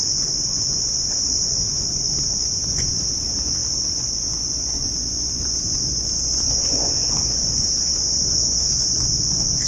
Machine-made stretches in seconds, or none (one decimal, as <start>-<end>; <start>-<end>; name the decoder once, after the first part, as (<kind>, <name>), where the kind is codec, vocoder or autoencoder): 0.0-9.7 (vocoder, Vocos)